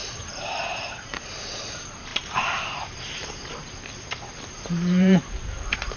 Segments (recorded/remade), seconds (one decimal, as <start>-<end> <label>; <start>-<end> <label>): 0.0-1.2 remade; 1.2-2.1 recorded; 2.1-6.0 remade